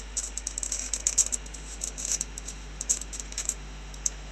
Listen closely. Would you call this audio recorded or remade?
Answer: remade